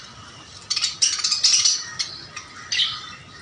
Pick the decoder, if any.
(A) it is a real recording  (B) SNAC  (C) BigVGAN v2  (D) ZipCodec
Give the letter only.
A